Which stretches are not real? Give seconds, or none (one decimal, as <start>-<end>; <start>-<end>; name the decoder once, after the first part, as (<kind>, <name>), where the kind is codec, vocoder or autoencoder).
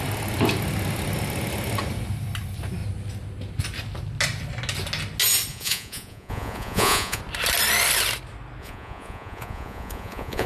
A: 5.5-7.2 (vocoder, Vocos); 8.6-10.5